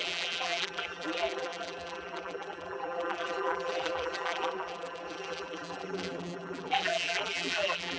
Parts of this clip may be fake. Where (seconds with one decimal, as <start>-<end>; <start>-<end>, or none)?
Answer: 0.0-8.0